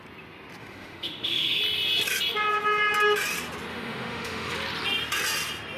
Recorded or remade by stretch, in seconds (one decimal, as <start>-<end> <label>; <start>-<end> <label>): 0.0-0.6 recorded; 0.6-1.6 remade; 1.6-3.7 recorded; 3.7-4.5 remade; 4.5-5.8 recorded